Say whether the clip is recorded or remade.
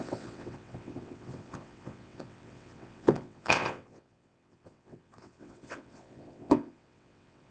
remade